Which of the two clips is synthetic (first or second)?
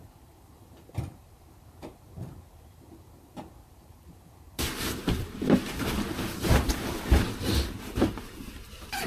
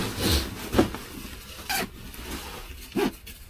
first